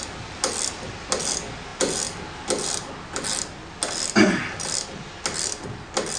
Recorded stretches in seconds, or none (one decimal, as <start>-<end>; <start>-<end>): 0.0-6.2